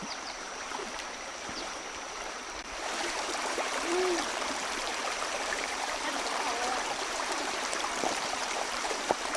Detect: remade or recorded remade